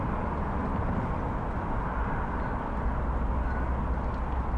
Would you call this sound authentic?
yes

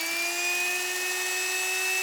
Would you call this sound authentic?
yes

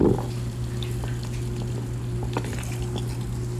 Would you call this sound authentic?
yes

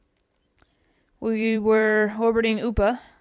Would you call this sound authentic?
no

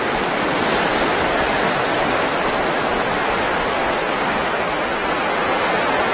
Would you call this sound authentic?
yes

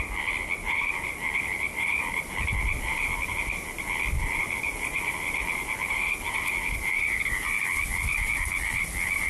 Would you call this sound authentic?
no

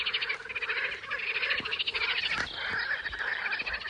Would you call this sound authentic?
yes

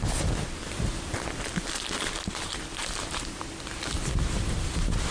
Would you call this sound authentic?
no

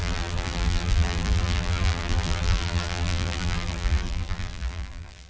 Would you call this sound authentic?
no